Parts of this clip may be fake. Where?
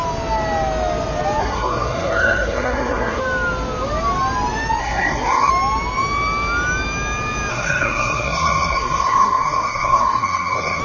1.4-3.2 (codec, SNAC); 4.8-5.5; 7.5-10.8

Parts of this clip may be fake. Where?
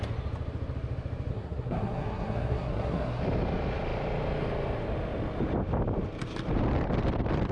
1.3-3.2 (codec, SNAC)